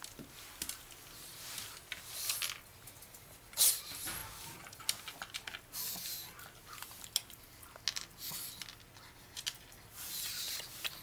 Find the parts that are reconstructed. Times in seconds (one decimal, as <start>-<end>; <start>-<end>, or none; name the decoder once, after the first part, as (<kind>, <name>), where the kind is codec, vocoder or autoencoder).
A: none